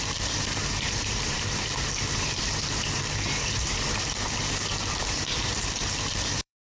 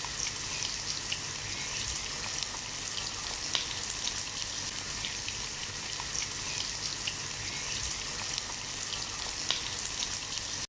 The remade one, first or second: first